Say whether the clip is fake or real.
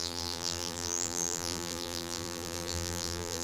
fake